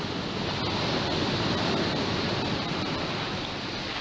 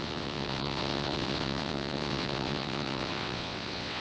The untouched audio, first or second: first